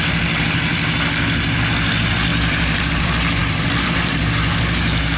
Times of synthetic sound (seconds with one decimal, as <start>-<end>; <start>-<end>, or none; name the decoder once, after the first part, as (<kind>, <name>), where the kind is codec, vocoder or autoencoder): 0.7-1.9 (vocoder, BigVGAN v2); 2.3-2.9; 3.4-4.2